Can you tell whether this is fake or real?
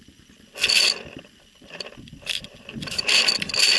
real